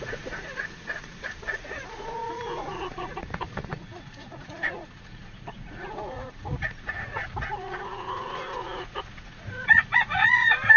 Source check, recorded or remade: remade